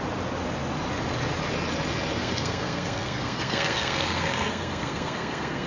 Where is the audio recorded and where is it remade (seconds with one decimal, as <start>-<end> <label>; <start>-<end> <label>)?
0.0-2.2 recorded; 2.2-5.7 remade